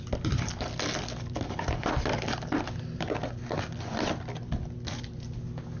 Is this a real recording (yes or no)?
yes